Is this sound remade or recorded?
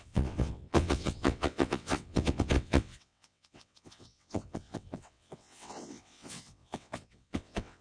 remade